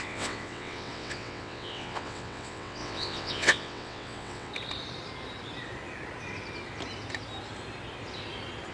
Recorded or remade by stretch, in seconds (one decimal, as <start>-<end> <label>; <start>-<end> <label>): 0.0-4.5 remade; 4.5-8.7 recorded